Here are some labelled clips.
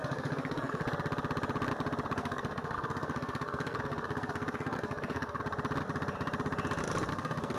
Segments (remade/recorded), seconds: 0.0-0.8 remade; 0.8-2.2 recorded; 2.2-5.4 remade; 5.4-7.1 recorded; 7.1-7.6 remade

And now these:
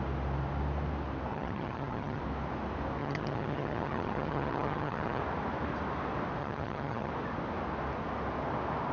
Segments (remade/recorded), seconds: 0.0-1.3 recorded; 1.3-2.2 remade; 2.2-3.0 recorded; 3.0-5.2 remade; 5.2-6.4 recorded; 6.4-7.1 remade; 7.1-8.9 recorded

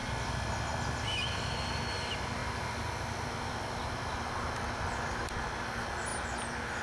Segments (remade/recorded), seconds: 0.0-1.8 remade; 1.8-2.4 recorded; 2.4-5.3 remade; 5.3-6.8 recorded

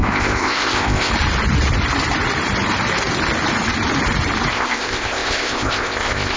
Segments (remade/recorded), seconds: 0.0-1.1 remade; 1.1-4.5 recorded; 4.5-6.4 remade

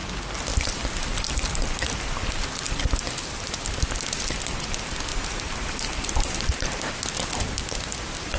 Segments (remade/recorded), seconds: 0.0-5.1 recorded; 5.1-6.9 remade; 6.9-8.4 recorded

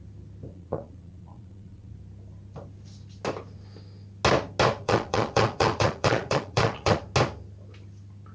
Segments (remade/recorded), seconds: 0.0-0.5 recorded; 0.5-1.9 remade; 1.9-4.8 recorded; 4.8-7.0 remade; 7.0-8.3 recorded

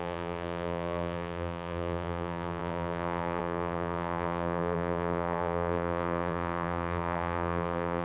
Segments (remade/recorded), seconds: 0.0-8.0 remade